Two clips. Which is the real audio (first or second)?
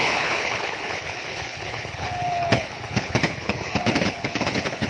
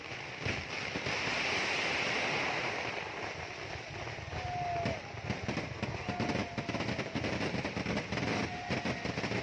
second